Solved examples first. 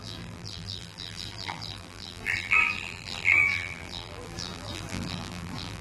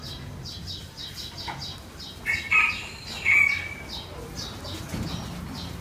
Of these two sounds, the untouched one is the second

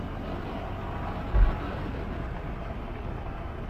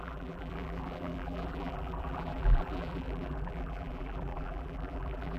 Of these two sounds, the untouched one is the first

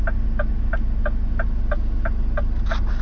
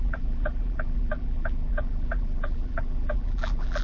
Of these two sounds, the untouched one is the first